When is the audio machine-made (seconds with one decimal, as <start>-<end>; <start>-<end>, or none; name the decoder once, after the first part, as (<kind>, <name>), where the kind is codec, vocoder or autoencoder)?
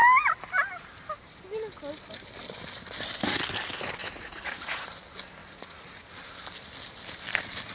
4.0-4.8 (vocoder, Vocos); 5.4-6.1